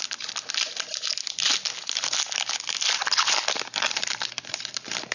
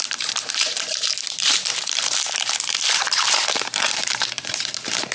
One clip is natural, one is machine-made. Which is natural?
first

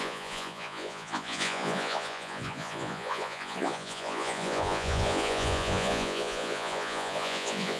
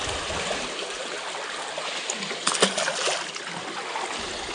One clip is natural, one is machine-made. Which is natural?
second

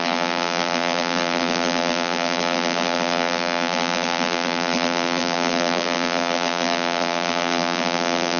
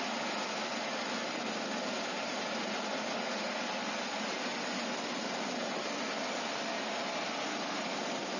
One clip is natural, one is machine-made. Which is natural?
second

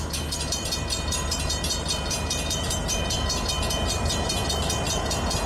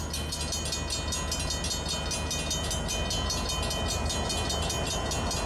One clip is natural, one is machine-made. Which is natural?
second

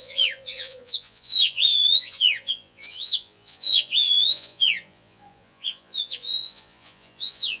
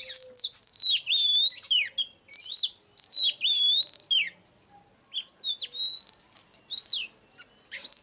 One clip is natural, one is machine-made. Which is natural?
second